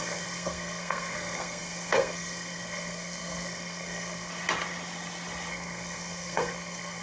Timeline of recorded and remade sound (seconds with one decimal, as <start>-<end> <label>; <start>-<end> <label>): 0.0-4.3 remade; 4.3-5.5 recorded; 5.5-7.0 remade